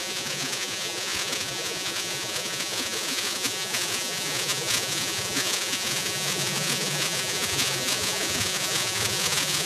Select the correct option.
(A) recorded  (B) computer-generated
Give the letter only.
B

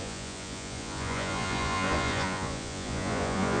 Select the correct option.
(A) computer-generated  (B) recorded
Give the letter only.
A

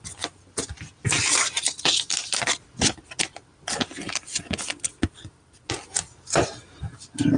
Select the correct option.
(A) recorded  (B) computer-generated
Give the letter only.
A